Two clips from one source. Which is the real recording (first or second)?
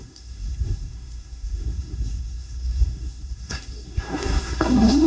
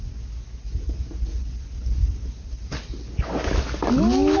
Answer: second